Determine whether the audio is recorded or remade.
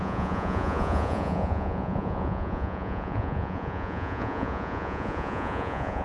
remade